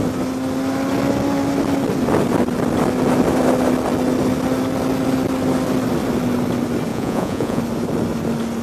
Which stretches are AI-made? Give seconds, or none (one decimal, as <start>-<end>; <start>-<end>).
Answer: 6.9-7.6

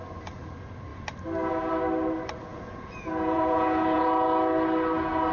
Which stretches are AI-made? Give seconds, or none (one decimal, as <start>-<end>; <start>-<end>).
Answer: 2.5-4.0